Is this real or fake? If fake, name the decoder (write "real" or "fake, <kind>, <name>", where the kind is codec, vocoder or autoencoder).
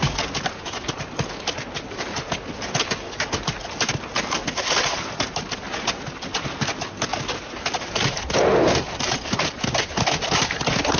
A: real